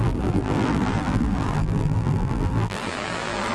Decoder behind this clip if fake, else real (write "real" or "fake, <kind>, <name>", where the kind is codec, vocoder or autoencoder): fake, vocoder, BigVGAN v2